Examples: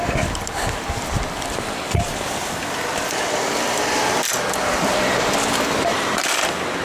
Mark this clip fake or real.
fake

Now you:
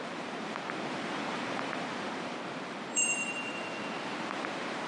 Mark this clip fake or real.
fake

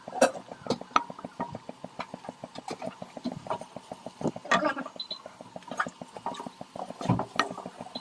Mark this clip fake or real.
real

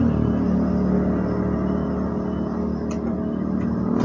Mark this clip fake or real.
real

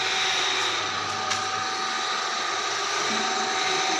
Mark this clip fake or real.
real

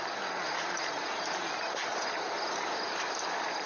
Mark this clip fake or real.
fake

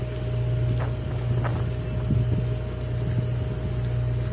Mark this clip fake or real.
real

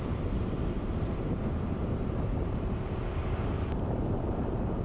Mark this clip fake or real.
fake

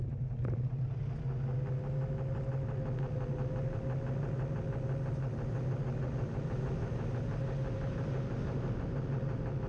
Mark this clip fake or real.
real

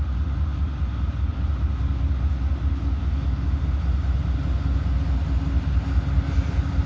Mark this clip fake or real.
real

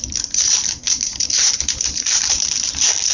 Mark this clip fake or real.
fake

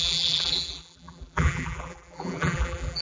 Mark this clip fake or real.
fake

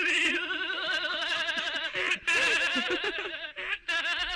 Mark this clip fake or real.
fake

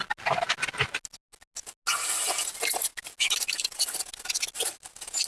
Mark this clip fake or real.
real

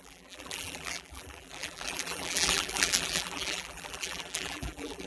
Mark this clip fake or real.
fake